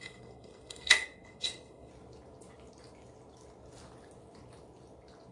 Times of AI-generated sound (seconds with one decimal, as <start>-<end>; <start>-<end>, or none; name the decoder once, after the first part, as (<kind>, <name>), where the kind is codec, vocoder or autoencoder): 0.0-1.9 (codec, SNAC)